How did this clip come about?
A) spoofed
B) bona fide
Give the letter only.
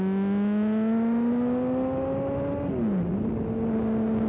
B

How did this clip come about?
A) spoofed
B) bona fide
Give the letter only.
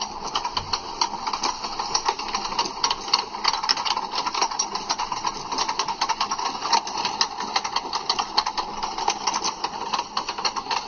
B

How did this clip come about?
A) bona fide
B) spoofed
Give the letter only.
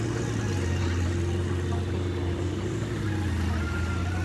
A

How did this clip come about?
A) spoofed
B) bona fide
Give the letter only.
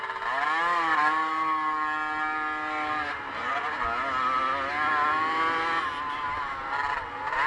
B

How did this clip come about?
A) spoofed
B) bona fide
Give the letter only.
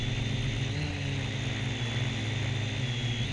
B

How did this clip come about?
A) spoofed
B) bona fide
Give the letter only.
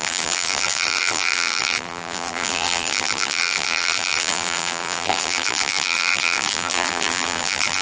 A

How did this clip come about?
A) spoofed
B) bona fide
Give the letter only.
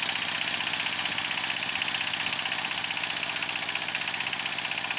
B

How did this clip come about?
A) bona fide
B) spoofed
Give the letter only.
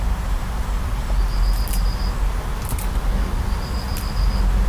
A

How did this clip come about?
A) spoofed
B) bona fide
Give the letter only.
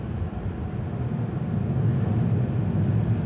B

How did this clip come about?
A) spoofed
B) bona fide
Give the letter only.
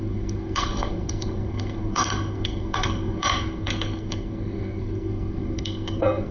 A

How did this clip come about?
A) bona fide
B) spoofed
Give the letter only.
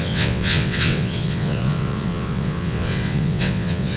B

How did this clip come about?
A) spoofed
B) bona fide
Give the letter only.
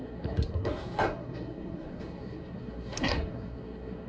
A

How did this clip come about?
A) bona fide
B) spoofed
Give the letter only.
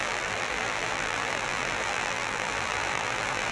B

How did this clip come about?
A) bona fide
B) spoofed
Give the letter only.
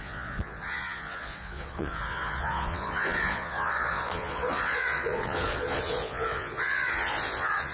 B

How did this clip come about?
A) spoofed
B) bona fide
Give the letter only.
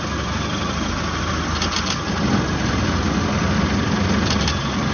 B